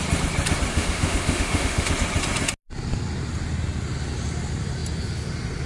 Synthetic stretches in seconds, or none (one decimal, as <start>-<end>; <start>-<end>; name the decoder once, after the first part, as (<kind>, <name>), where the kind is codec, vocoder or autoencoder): 0.7-1.9 (autoencoder, DAC-VAE)